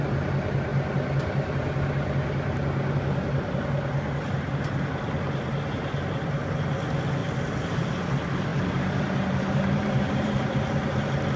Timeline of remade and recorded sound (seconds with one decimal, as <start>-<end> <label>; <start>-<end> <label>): 0.0-7.2 recorded; 7.2-7.9 remade; 7.9-8.5 recorded; 8.5-11.0 remade; 11.0-11.4 recorded